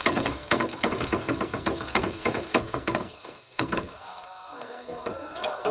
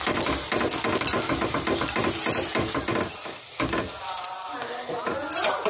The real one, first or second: second